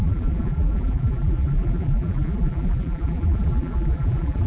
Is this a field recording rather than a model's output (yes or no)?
no